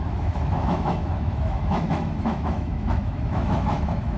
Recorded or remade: remade